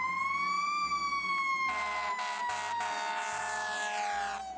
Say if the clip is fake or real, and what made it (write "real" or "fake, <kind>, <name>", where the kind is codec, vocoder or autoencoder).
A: real